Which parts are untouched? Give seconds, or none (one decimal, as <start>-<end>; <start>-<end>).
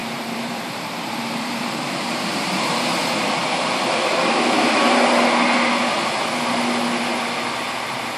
3.0-3.4; 4.1-8.2